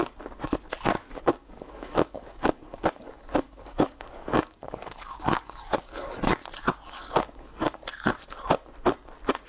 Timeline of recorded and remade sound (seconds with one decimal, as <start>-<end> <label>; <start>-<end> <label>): 0.0-1.1 recorded; 1.1-6.2 remade; 6.2-7.0 recorded; 7.0-7.8 remade; 7.8-9.5 recorded